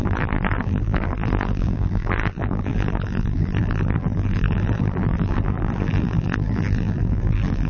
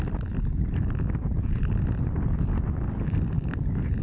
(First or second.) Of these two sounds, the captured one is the second